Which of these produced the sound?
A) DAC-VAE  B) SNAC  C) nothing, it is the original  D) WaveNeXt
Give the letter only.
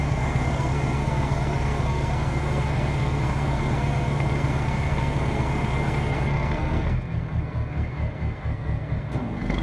B